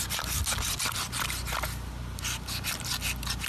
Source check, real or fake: real